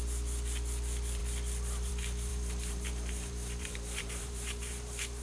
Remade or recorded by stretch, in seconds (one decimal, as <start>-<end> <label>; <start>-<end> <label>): 0.0-2.3 recorded; 2.3-5.2 remade

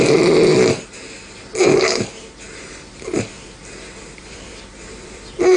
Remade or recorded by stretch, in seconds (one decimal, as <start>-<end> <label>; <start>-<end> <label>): 0.0-0.5 remade; 0.5-2.6 recorded; 2.6-5.6 remade

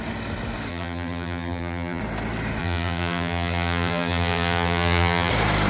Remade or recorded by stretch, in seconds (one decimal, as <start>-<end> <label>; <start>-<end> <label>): 0.0-0.7 recorded; 0.7-2.0 remade; 2.0-2.6 recorded; 2.6-5.3 remade; 5.3-5.7 recorded